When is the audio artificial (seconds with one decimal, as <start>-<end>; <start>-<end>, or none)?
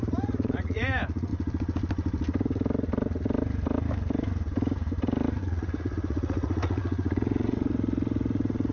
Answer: 0.0-1.3; 5.4-8.7